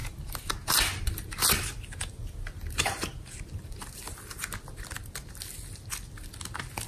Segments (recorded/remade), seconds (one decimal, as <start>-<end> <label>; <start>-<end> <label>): 0.0-6.9 recorded